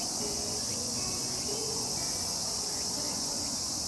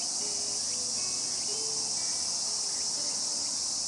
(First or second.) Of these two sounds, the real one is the second